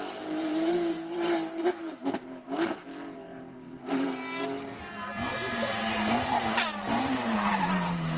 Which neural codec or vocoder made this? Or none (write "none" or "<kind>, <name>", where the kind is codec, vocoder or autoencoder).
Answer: vocoder, BigVGAN v2